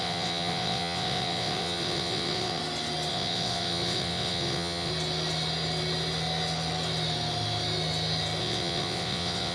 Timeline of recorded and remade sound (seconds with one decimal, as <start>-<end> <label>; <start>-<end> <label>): 0.0-2.6 remade; 2.6-3.1 recorded; 3.1-4.9 remade; 4.9-8.4 recorded; 8.4-9.5 remade